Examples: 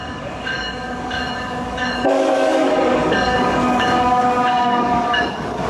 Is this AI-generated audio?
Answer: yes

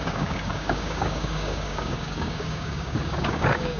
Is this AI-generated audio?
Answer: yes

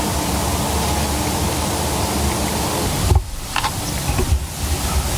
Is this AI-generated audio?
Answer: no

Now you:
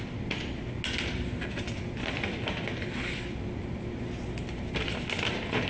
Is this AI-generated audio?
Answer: no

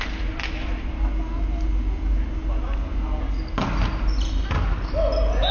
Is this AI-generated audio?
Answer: no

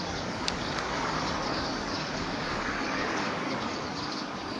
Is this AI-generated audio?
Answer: yes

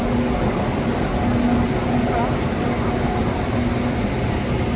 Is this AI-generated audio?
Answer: no